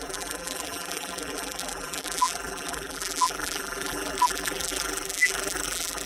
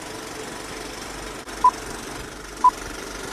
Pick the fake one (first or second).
first